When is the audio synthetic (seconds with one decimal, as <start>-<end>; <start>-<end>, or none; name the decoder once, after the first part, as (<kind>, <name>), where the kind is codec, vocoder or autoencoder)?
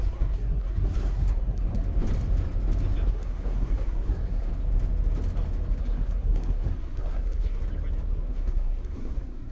0.0-1.8 (codec, SNAC); 3.1-4.5; 5.8-7.6; 8.3-9.5